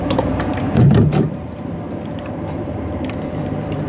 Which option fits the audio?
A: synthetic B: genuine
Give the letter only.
A